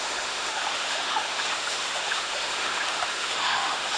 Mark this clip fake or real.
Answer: fake